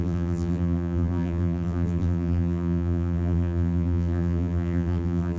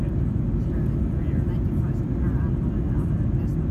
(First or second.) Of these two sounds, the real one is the second